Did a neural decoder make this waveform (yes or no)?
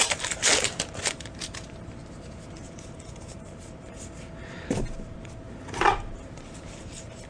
yes